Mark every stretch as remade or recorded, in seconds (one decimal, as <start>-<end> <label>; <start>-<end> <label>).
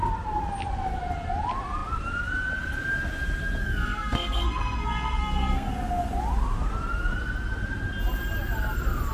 0.0-3.6 recorded; 3.6-5.7 remade; 5.7-9.1 recorded